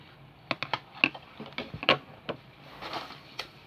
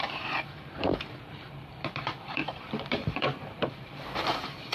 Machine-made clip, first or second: second